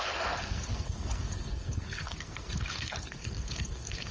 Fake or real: fake